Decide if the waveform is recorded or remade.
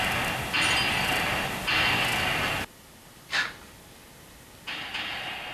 recorded